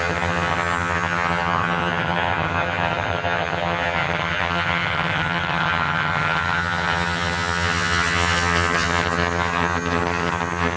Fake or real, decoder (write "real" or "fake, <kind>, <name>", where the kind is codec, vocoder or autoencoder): fake, vocoder, HiFi-GAN